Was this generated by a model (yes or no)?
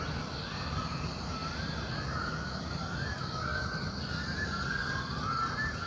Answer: no